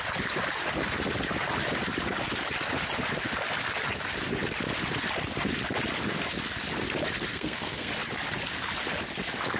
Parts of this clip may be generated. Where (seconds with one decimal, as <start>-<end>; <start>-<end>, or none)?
7.3-7.9